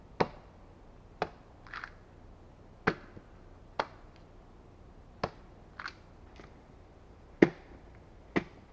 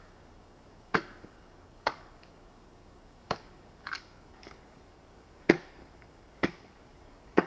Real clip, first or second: first